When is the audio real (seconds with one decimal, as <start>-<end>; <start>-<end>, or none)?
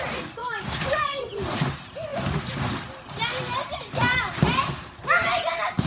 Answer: 0.0-0.4; 1.2-5.9